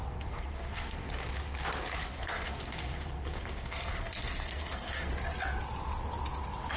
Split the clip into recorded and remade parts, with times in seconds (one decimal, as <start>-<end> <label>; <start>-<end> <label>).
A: 0.0-1.1 remade; 1.1-2.1 recorded; 2.1-5.1 remade; 5.1-6.8 recorded